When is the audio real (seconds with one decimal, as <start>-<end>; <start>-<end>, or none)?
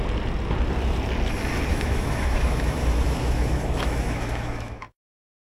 0.0-1.7; 5.0-5.5